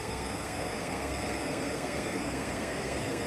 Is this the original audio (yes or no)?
no